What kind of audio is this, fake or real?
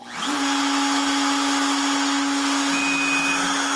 real